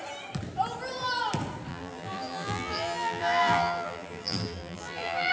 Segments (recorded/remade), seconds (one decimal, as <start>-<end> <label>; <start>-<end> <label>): 0.0-1.7 recorded; 1.7-5.3 remade